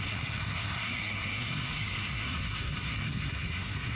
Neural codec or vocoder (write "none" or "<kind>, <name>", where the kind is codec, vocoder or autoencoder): codec, SNAC